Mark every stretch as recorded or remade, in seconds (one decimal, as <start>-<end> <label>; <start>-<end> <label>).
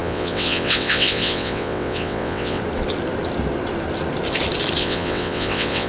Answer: 0.0-2.6 remade; 2.6-4.8 recorded; 4.8-5.9 remade